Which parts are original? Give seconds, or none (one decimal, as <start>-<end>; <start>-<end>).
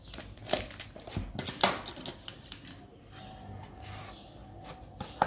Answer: 0.0-5.3